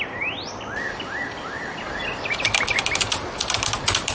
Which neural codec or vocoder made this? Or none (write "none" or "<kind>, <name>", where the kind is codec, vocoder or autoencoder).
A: none